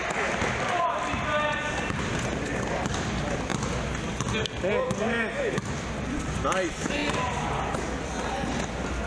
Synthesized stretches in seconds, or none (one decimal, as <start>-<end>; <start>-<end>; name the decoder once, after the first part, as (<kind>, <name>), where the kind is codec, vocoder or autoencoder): none